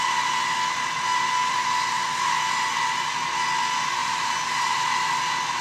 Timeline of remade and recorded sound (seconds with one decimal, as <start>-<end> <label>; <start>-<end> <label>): 0.0-4.0 recorded; 4.0-4.9 remade; 4.9-5.6 recorded